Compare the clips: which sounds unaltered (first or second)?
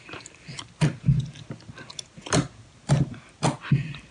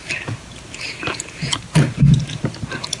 first